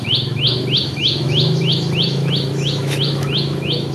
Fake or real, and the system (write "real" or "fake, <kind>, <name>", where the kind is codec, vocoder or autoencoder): fake, autoencoder, DAC-VAE